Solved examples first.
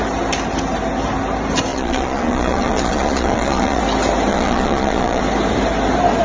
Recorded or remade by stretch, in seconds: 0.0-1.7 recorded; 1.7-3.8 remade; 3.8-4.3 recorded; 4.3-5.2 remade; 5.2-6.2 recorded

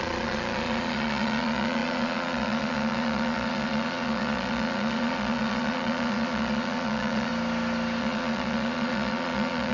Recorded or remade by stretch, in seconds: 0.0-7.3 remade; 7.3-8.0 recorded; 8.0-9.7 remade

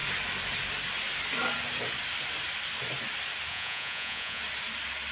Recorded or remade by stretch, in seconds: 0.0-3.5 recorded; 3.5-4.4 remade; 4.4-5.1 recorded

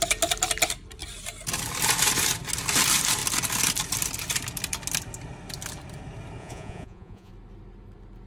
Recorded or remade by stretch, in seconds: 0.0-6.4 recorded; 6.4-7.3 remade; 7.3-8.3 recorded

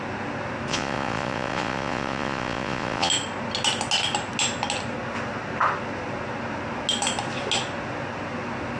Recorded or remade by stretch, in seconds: 0.0-0.7 recorded; 0.7-3.1 remade; 3.1-8.8 recorded

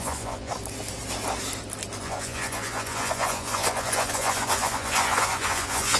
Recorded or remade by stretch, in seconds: 0.0-0.5 remade; 0.5-2.0 recorded; 2.0-6.0 remade

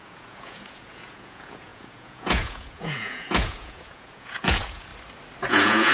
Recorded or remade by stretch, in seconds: 0.0-4.9 remade; 4.9-5.5 recorded; 5.5-5.9 remade